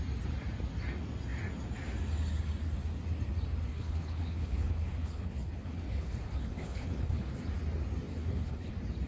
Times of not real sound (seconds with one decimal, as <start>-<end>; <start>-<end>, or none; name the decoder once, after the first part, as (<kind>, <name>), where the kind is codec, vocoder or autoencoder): 3.7-7.3 (codec, HILCodec); 8.1-8.7

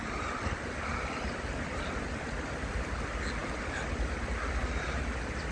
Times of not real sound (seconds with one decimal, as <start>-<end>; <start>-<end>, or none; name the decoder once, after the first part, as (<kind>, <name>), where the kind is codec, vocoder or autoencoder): none